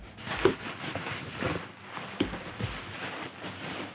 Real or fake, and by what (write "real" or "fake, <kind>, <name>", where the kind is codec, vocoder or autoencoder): real